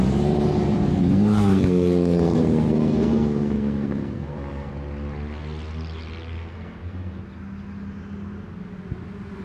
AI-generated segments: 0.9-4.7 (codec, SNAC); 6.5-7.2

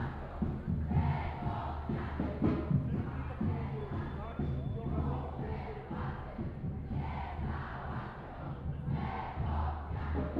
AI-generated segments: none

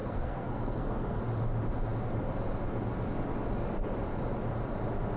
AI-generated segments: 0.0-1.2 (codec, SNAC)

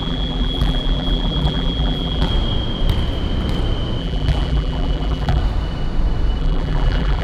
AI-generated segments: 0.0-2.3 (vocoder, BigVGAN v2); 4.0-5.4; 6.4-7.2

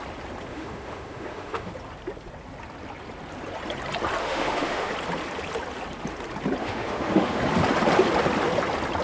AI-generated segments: 0.5-1.7 (autoencoder, DAC-VAE); 4.2-4.9; 6.6-7.4

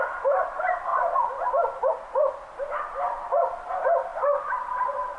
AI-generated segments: none

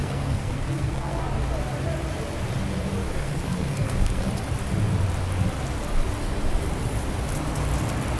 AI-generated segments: 0.0-1.2 (codec, SNAC); 3.0-4.3